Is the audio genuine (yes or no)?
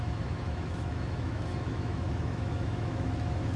no